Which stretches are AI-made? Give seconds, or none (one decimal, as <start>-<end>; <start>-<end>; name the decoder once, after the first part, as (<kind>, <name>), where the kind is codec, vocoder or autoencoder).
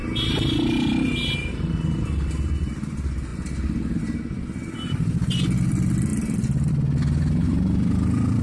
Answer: none